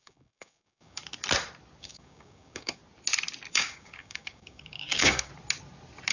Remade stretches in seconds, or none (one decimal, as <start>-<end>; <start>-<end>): 0.0-1.0; 1.8-2.8; 3.5-5.3